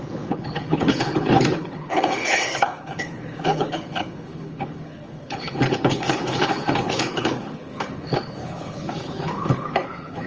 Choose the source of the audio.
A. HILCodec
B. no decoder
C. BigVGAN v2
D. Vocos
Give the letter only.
A